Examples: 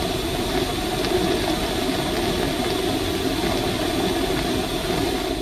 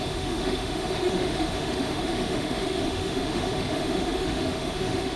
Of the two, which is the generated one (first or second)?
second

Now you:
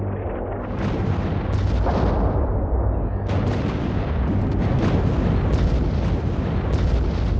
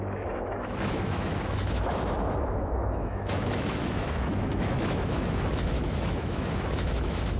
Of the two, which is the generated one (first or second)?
second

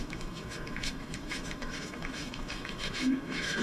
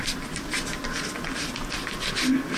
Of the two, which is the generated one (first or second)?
first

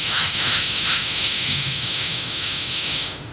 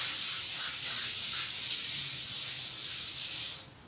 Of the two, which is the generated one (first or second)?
first